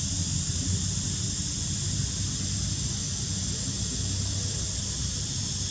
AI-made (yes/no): no